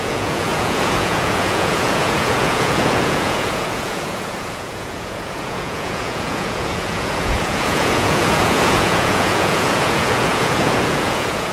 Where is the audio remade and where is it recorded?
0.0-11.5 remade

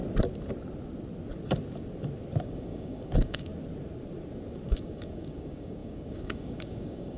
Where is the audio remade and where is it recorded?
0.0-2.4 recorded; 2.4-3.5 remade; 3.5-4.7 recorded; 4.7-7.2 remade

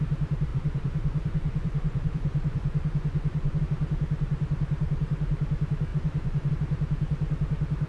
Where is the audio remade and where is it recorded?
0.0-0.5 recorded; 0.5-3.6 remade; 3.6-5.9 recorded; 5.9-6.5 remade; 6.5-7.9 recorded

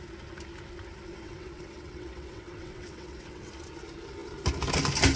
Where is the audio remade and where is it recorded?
0.0-1.1 recorded; 1.1-3.5 remade; 3.5-5.2 recorded

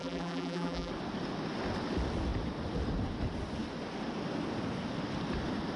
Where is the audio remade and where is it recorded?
0.0-0.9 remade; 0.9-5.8 recorded